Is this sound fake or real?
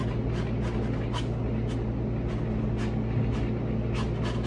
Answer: real